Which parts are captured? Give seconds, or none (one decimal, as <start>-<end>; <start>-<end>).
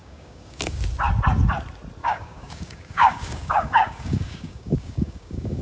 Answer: 0.8-2.0